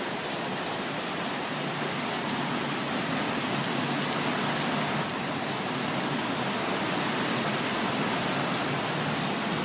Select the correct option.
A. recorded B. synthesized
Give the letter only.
A